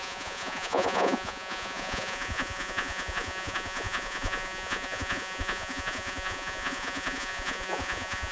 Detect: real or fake fake